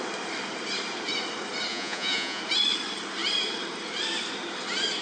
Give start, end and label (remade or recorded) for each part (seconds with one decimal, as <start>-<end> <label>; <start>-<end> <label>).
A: 0.0-1.7 recorded; 1.7-2.4 remade; 2.4-5.0 recorded